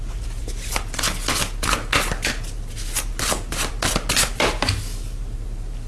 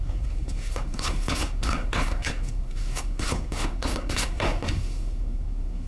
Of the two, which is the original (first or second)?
first